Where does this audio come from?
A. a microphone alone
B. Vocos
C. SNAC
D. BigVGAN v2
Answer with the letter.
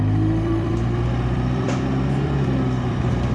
D